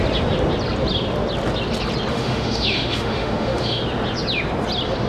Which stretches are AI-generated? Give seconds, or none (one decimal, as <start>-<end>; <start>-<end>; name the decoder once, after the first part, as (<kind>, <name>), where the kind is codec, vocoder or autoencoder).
2.1-3.8 (autoencoder, DAC-VAE)